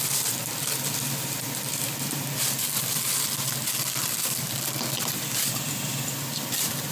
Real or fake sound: fake